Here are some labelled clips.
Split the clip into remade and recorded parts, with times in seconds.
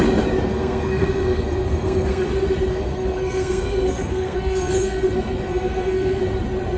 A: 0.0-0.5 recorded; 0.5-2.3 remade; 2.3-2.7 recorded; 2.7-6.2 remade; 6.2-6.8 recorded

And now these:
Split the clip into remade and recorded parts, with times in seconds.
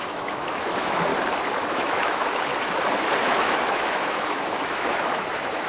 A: 0.0-1.1 remade; 1.1-1.7 recorded; 1.7-2.5 remade; 2.5-3.2 recorded; 3.2-5.7 remade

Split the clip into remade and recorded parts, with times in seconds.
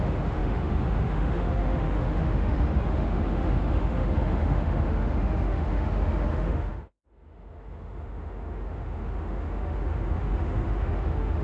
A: 0.0-11.4 remade